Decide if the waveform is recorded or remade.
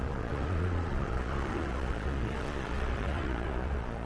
remade